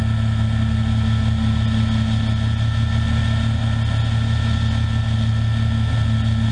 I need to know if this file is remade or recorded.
recorded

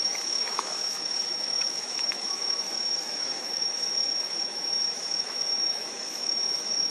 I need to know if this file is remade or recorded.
remade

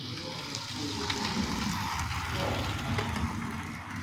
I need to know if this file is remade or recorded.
recorded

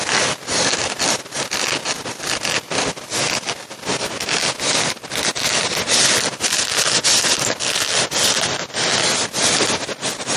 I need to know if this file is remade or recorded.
recorded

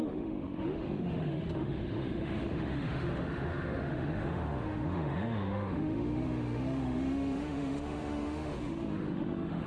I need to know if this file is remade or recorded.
remade